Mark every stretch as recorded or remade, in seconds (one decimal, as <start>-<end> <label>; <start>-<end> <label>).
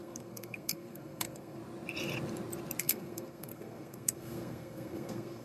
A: 0.0-1.6 remade; 1.6-2.8 recorded; 2.8-5.4 remade